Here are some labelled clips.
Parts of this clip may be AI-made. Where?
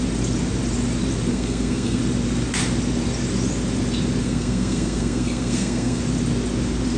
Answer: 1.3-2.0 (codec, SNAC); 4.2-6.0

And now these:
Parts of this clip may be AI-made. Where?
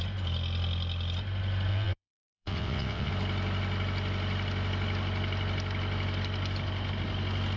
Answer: 1.7-3.1 (vocoder, WaveNeXt)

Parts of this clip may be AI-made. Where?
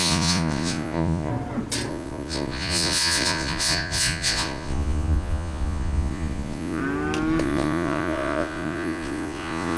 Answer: 0.0-1.3 (vocoder, Vocos); 1.9-6.8; 7.4-9.8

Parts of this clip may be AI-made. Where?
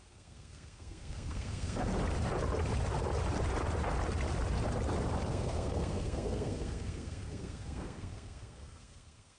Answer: 0.0-1.9 (codec, SNAC); 5.3-9.4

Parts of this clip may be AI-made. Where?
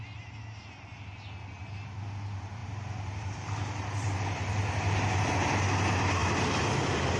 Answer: 2.6-5.2 (vocoder, BigVGAN v2)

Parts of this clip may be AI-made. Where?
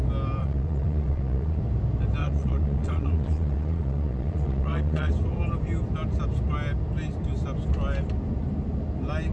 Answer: 0.4-1.6 (vocoder, Vocos); 2.2-5.1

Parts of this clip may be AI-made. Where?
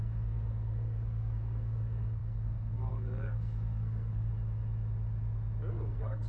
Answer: 0.0-4.3 (codec, SNAC); 5.7-6.3